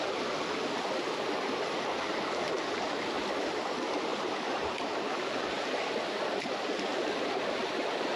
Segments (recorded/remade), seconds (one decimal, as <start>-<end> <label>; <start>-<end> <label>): 0.0-4.1 recorded; 4.1-6.1 remade; 6.1-8.2 recorded